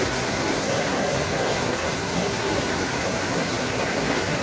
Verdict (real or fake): fake